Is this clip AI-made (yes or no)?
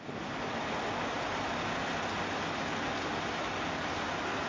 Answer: no